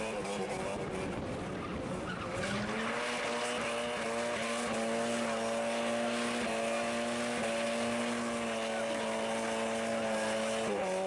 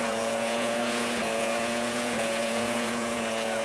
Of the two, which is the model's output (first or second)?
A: second